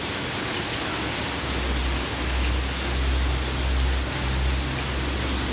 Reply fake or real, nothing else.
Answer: real